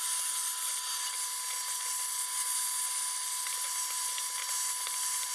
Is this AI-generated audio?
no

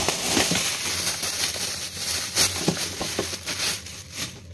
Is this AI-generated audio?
yes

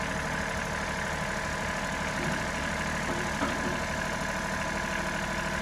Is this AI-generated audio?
no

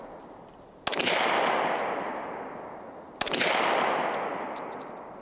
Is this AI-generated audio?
no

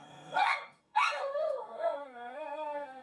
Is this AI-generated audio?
yes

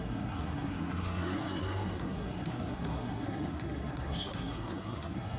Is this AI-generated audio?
yes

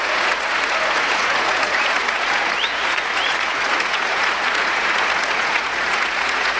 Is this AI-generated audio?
yes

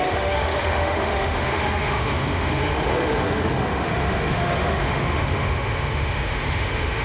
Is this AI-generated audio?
yes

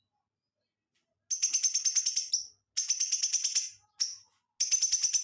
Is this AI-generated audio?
no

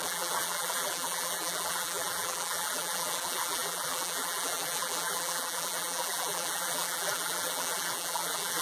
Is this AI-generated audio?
yes